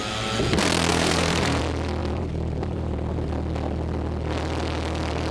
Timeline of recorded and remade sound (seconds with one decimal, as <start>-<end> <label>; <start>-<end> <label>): 0.0-0.9 recorded; 0.9-1.6 remade; 1.6-2.0 recorded; 2.0-3.3 remade; 3.3-5.3 recorded